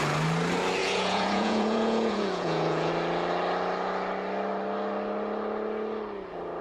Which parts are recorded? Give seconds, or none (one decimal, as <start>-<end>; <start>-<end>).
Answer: 0.0-0.8; 2.9-6.6